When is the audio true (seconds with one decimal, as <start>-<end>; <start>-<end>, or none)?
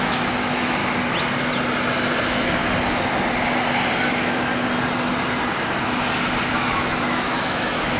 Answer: 0.8-2.2; 2.6-4.1; 4.5-6.5